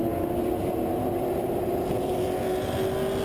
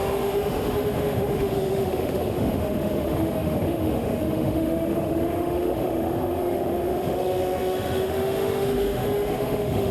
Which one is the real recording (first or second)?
first